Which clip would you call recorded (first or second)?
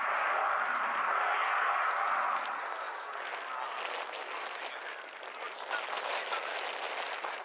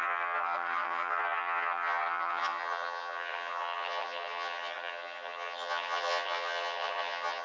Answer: first